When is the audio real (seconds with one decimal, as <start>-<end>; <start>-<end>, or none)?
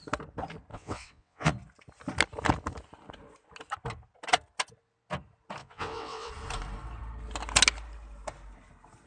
0.0-0.7; 1.5-5.6; 6.3-9.1